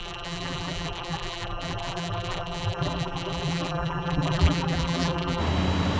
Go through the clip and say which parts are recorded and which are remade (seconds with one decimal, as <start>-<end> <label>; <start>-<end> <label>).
0.0-5.4 remade; 5.4-6.0 recorded